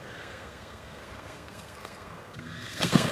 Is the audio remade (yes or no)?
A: yes